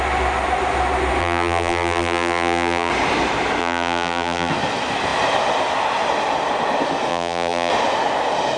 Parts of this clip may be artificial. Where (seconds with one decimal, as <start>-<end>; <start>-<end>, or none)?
1.2-2.9; 3.6-4.5; 7.1-7.7